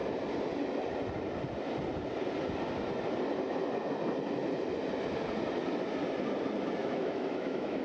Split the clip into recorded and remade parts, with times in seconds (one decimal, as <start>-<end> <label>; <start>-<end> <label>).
0.0-6.8 recorded; 6.8-7.8 remade